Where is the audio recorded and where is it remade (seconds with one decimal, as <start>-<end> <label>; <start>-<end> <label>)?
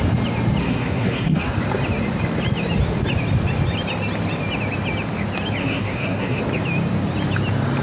0.0-0.6 recorded; 0.6-1.5 remade; 1.5-5.6 recorded; 5.6-6.4 remade; 6.4-7.8 recorded